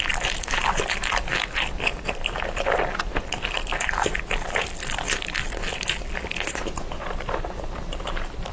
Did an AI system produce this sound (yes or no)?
no